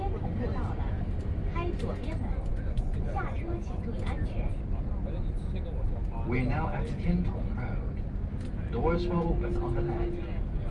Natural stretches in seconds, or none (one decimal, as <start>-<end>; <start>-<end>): 0.0-2.5; 3.8-10.7